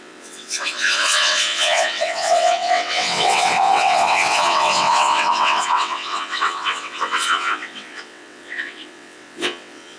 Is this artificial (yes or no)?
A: yes